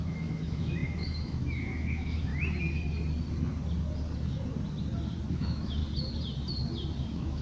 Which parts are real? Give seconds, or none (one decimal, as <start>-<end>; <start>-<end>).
2.3-5.3; 5.8-7.0